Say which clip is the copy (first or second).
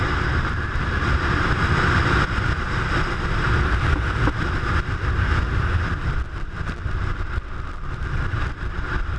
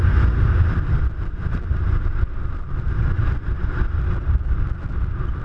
first